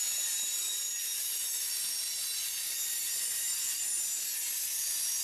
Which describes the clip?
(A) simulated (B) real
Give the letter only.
B